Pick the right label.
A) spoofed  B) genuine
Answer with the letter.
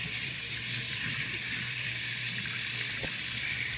A